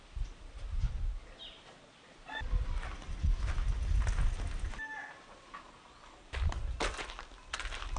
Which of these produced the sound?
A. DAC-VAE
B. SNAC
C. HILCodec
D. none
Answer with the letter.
D